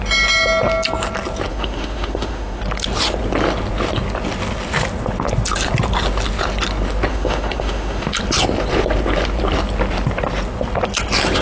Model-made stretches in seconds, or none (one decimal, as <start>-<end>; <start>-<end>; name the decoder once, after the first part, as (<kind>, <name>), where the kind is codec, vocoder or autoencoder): 1.5-2.6 (autoencoder, DAC-VAE); 7.1-8.1